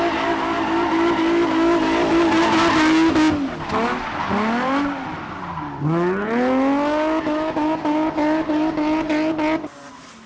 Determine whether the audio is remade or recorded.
recorded